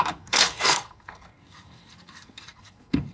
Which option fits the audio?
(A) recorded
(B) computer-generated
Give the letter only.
B